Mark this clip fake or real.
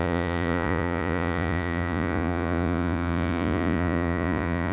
fake